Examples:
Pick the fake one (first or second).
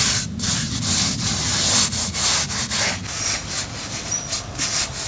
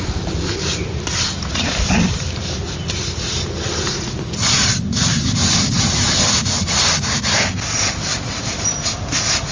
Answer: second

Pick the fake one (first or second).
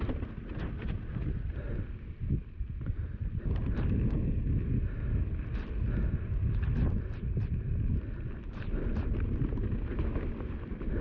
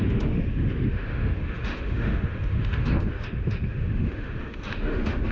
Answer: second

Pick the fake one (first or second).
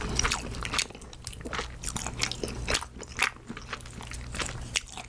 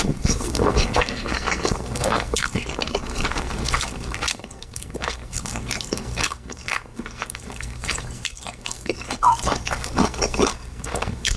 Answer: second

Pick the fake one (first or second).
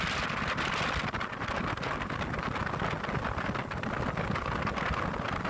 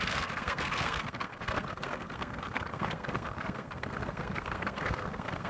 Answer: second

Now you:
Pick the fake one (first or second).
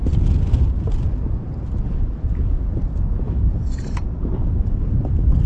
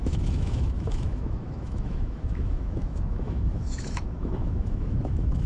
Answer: second